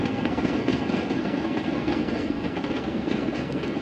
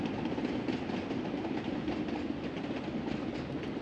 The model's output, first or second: first